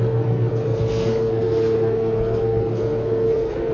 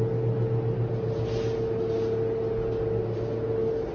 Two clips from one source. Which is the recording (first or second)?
second